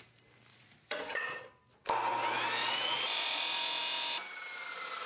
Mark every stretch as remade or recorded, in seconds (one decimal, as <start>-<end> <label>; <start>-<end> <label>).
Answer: 0.0-0.5 recorded; 0.5-1.4 remade; 1.4-2.6 recorded; 2.6-3.4 remade; 3.4-5.1 recorded